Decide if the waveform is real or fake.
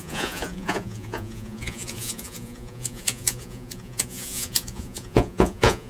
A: fake